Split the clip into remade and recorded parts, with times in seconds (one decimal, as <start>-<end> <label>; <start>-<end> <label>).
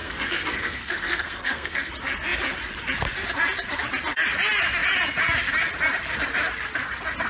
0.0-1.9 remade; 1.9-7.3 recorded